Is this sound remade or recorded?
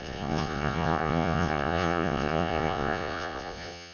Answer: remade